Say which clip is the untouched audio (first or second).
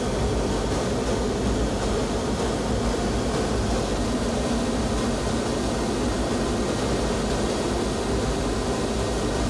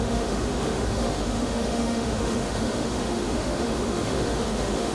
first